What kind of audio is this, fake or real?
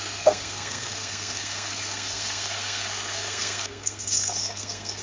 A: fake